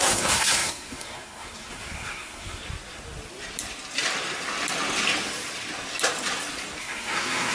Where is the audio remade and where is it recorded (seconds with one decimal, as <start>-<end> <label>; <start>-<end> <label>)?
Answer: 0.0-2.6 remade; 2.6-6.8 recorded; 6.8-7.5 remade